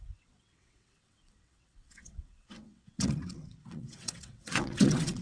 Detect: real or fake fake